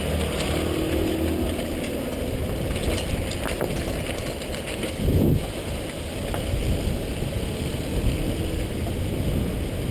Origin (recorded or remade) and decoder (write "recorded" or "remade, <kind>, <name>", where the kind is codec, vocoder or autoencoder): recorded